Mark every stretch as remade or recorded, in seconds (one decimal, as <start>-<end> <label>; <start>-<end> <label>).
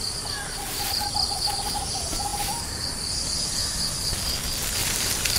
0.0-4.8 recorded; 4.8-5.4 remade